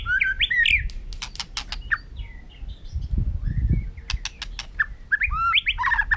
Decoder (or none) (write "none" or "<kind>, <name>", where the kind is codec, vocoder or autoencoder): none